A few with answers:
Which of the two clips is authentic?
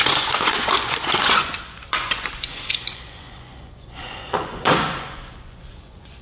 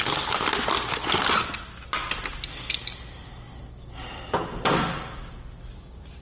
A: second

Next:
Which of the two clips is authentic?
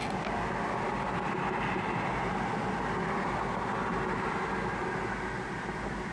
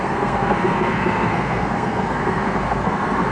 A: first